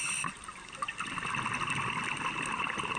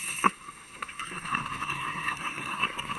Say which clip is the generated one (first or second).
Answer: second